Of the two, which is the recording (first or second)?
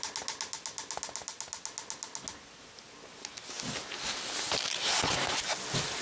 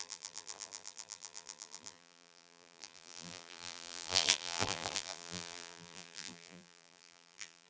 first